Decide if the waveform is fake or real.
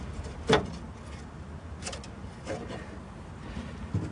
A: real